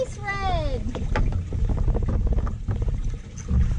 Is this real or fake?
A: real